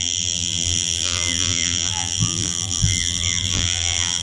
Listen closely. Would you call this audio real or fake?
fake